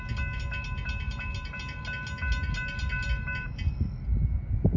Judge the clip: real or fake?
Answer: real